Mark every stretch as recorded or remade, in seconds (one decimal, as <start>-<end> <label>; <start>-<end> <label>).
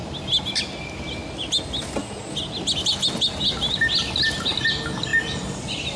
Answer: 0.0-5.1 recorded; 5.1-5.6 remade; 5.6-6.0 recorded